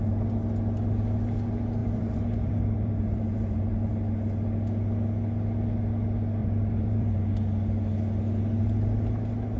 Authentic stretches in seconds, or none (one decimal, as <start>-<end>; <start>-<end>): 0.0-1.8; 3.9-6.4; 7.3-9.6